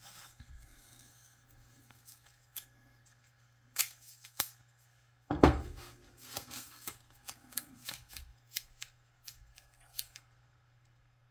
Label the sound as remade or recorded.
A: remade